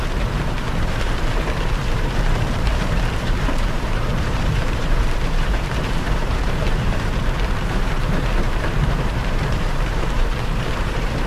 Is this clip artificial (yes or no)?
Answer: yes